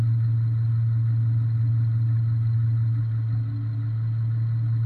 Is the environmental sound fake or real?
real